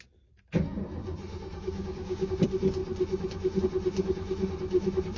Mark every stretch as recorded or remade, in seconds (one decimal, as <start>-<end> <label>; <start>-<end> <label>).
0.0-1.3 recorded; 1.3-2.3 remade; 2.3-5.2 recorded